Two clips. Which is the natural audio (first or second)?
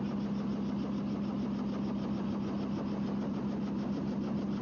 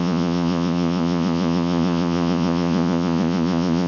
first